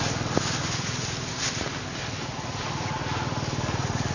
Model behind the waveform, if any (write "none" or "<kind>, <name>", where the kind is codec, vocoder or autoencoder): none